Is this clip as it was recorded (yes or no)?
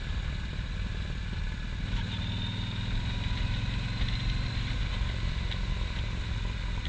yes